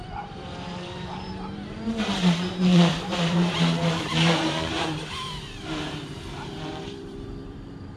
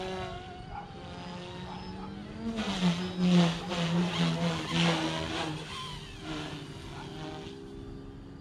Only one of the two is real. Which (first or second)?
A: second